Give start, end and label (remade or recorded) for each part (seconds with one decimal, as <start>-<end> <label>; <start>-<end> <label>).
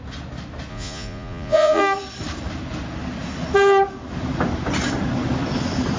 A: 0.0-0.7 recorded; 0.7-1.8 remade; 1.8-6.0 recorded